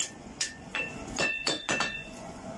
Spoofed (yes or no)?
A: yes